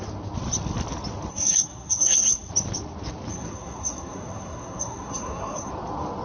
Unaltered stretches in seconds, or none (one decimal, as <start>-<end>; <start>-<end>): 0.0-1.3; 2.5-3.3; 5.7-6.2